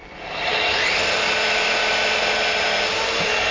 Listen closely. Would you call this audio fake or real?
real